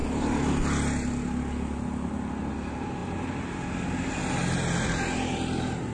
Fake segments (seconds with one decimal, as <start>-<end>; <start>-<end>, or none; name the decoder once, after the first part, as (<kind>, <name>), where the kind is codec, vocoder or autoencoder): none